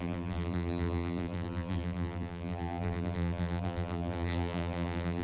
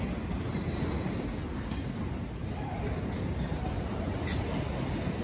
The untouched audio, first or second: second